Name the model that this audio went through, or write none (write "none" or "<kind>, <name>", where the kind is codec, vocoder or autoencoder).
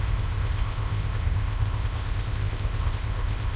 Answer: codec, ZipCodec